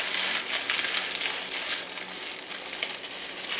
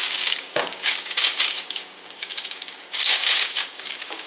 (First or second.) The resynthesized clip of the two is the second